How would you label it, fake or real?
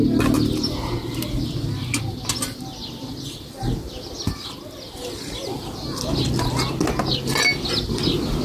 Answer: real